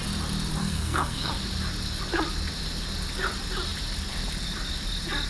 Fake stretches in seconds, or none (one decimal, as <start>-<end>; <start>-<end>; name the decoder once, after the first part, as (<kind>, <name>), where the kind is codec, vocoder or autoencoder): 0.6-1.3 (codec, SNAC)